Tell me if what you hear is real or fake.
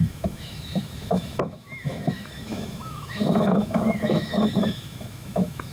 fake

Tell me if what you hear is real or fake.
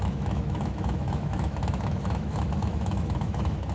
fake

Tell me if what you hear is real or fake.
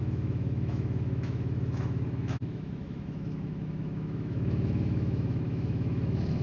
fake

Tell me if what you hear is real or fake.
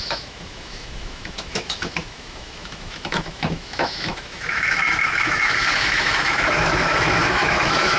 fake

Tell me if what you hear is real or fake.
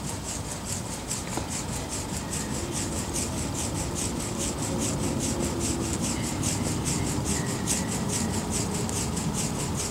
real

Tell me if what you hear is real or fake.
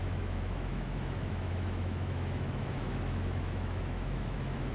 fake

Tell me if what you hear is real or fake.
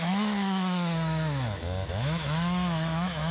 fake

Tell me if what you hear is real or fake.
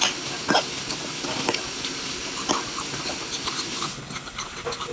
real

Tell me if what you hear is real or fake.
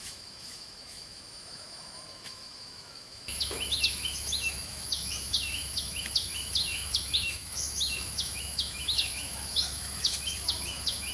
fake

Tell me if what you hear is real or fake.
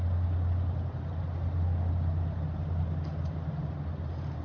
real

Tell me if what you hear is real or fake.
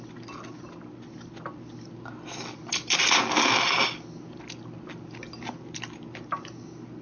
real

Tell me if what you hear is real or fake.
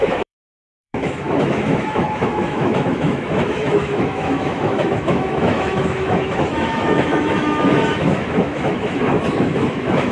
fake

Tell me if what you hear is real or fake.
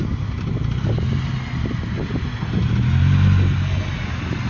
real